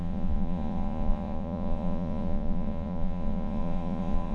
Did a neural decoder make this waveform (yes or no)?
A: yes